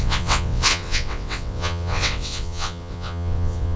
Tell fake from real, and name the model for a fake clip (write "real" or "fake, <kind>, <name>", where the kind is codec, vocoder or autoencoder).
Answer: fake, vocoder, WaveNeXt